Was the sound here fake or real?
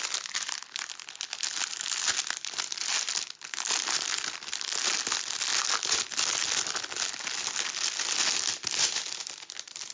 real